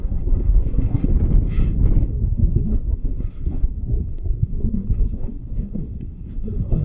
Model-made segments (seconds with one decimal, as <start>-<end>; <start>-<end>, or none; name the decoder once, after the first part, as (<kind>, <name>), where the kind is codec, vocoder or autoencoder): 0.0-1.1 (codec, SNAC); 2.1-6.8